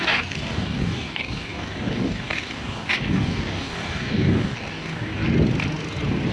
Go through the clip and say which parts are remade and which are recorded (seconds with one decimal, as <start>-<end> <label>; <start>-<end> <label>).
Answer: 0.0-5.2 remade; 5.2-6.3 recorded